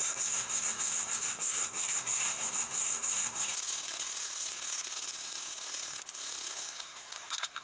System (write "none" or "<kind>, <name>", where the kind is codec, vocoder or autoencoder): codec, SNAC